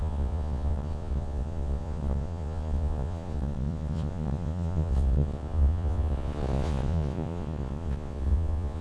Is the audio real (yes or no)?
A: no